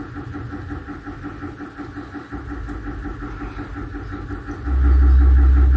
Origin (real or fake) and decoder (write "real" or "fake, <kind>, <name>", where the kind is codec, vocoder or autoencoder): real